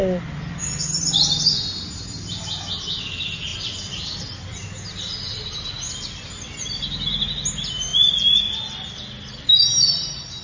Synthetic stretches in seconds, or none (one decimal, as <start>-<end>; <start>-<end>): none